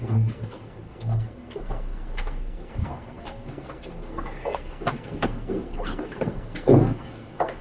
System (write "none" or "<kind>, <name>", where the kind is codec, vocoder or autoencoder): codec, SNAC